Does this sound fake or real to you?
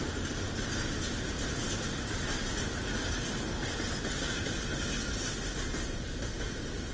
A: real